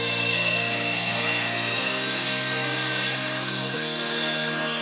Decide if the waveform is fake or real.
fake